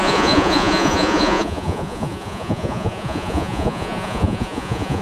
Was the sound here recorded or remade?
remade